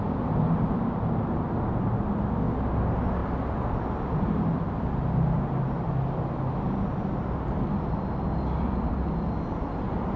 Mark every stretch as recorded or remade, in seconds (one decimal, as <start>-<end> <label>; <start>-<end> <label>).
0.0-10.2 recorded